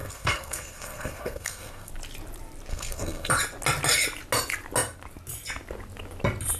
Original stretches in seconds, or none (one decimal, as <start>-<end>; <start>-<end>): 1.9-2.7; 3.3-6.6

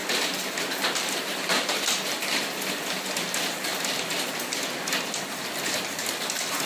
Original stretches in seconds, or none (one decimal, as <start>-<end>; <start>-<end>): 1.9-6.7

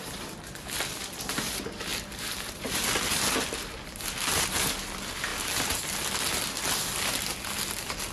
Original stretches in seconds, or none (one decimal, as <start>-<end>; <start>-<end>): 0.0-8.1